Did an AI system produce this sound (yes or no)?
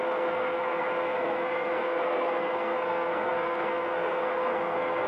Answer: yes